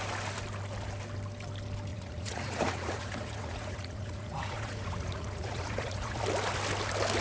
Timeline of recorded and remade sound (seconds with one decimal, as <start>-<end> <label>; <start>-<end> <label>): 0.0-1.9 recorded; 1.9-6.2 remade; 6.2-7.2 recorded